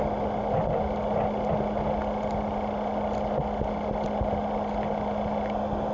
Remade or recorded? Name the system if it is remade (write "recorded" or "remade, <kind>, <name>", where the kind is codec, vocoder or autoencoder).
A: recorded